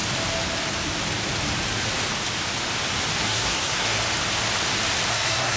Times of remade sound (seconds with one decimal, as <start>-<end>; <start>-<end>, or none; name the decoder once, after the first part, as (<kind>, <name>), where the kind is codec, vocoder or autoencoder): 3.2-4.0 (codec, SNAC); 5.1-5.6